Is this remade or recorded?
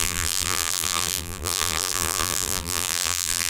remade